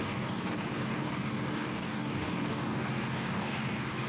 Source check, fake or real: fake